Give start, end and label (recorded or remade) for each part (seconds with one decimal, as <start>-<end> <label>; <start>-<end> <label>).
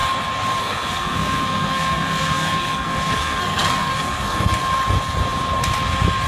0.0-0.6 recorded; 0.6-4.6 remade; 4.6-6.3 recorded